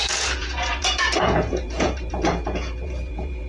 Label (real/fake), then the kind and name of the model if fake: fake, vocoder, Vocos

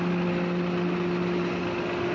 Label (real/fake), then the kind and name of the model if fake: real